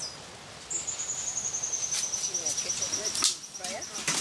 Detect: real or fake real